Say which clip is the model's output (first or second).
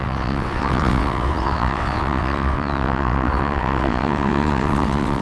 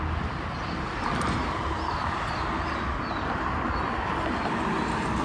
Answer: first